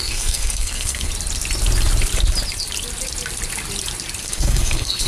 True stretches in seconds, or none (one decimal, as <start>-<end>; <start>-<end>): 1.1-4.2